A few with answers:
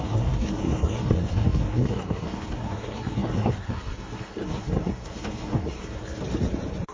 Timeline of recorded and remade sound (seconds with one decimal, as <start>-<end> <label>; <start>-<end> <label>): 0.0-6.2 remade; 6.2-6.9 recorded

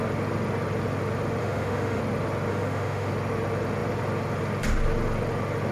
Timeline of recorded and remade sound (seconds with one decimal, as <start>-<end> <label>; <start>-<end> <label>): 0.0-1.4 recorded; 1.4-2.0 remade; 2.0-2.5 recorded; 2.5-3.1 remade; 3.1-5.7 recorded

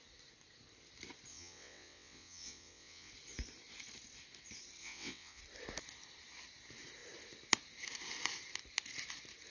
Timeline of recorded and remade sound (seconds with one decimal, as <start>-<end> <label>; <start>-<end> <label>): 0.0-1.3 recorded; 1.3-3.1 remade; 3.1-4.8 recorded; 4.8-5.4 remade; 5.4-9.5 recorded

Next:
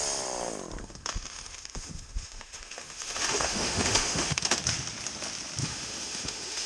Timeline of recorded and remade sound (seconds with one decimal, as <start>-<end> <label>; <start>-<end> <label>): 0.0-0.8 recorded; 0.8-4.6 remade; 4.6-5.6 recorded; 5.6-6.7 remade